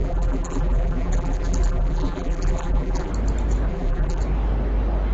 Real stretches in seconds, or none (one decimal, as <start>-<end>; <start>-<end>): 3.1-3.7; 4.2-5.1